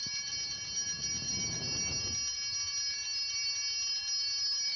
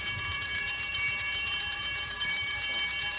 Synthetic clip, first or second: second